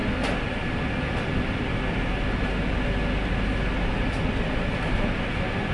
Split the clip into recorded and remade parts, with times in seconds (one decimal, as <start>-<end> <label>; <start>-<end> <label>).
0.0-5.7 recorded